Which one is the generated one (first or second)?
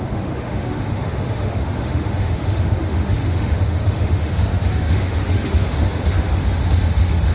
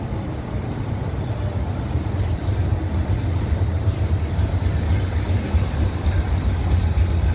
first